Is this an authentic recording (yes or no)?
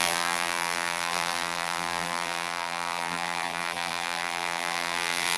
no